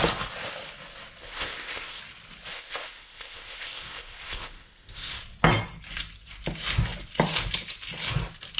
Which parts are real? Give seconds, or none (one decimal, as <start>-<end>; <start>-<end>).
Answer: 0.0-1.2; 2.0-2.5; 5.1-8.6